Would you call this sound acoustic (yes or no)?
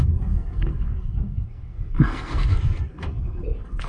no